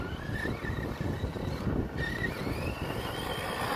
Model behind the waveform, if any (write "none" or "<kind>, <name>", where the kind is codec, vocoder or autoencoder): none